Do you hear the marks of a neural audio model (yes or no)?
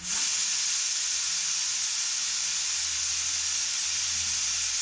no